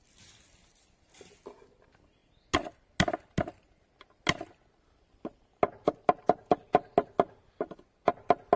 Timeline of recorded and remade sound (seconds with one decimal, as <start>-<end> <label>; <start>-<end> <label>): 0.0-8.6 recorded